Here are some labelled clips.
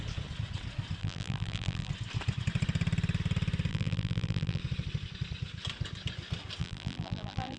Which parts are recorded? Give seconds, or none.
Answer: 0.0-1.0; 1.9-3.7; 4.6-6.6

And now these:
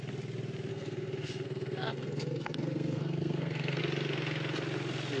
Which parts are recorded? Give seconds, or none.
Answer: 0.0-0.7; 3.8-5.2

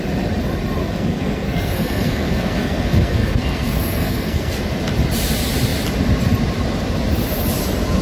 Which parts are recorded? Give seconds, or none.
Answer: 0.0-0.8; 4.6-8.0

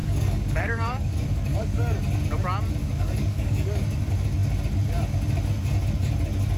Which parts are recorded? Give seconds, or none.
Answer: 2.0-2.8; 3.8-6.6

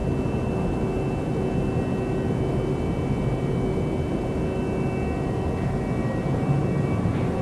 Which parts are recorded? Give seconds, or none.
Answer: 0.0-7.4

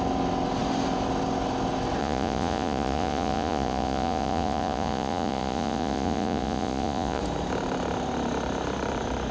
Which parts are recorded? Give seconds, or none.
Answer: 0.0-2.0; 7.2-9.3

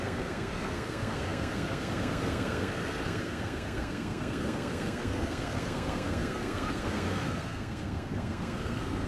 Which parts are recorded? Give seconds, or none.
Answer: none